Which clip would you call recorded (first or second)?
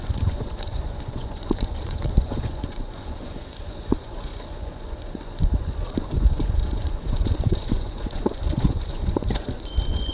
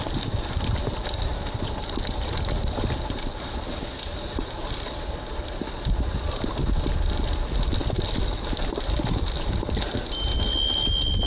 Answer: second